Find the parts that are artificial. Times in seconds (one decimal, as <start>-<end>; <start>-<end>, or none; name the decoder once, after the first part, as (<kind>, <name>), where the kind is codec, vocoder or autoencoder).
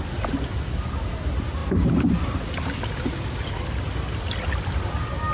none